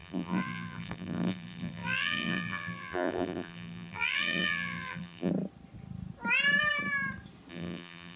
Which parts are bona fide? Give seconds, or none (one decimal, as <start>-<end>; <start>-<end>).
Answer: 5.3-7.5